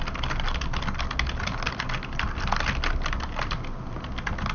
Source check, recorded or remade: recorded